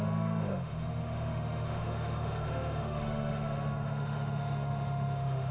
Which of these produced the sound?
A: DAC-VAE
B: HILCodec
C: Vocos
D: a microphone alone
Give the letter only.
A